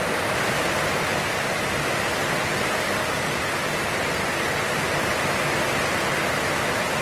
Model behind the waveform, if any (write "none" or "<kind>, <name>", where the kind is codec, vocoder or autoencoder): none